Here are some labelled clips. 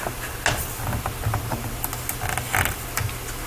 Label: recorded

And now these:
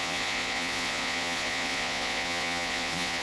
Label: remade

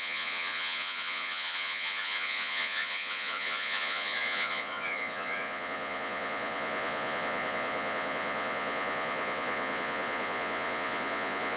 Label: remade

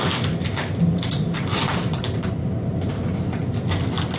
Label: recorded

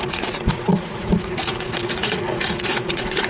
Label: remade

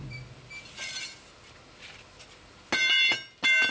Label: recorded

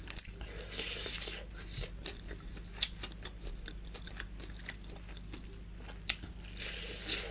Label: recorded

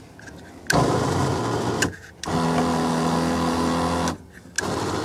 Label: recorded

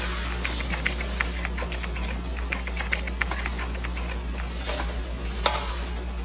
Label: recorded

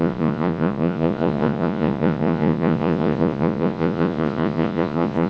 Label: remade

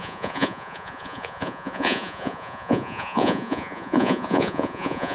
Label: remade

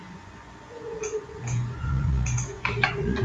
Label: remade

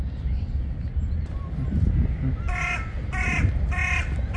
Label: recorded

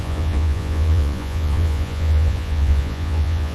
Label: remade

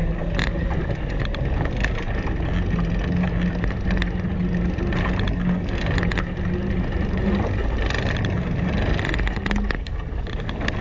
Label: recorded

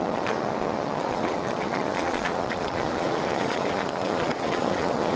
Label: remade